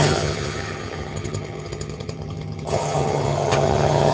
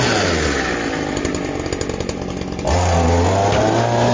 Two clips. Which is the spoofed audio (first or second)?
first